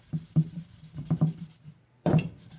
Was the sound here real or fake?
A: fake